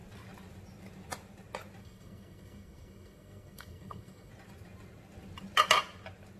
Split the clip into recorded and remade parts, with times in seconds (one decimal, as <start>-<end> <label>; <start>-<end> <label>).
0.0-1.8 recorded; 1.8-4.3 remade; 4.3-6.4 recorded